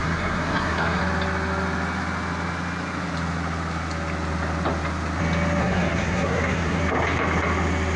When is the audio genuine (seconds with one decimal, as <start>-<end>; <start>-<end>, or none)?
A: 1.0-5.6; 6.8-8.0